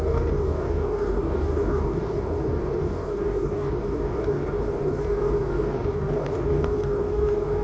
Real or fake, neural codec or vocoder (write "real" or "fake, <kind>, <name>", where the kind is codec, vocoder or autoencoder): fake, codec, DAC